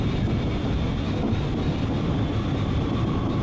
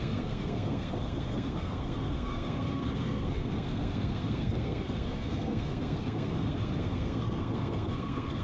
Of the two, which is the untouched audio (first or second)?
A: first